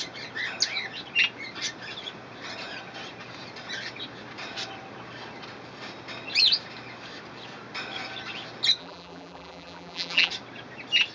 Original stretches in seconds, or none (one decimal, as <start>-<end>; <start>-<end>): 0.0-8.8; 10.3-11.1